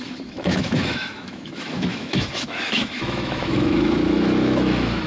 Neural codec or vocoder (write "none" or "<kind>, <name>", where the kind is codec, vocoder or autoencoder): autoencoder, DAC-VAE